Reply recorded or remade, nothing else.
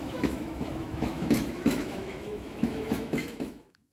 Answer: remade